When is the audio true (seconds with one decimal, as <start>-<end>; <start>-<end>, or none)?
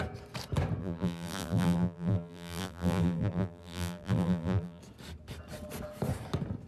0.0-0.8; 4.8-6.7